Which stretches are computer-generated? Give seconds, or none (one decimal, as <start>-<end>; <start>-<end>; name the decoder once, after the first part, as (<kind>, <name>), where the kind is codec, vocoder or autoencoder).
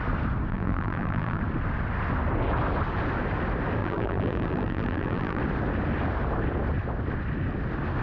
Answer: 0.5-1.4 (vocoder, BigVGAN v2); 3.8-5.4